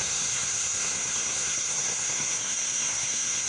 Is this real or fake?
fake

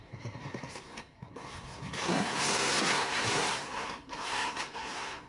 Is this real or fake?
fake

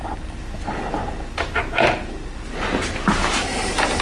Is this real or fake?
real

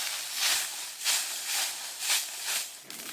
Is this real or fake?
real